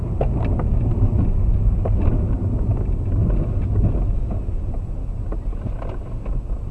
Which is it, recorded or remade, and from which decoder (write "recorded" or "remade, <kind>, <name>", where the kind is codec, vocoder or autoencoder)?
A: recorded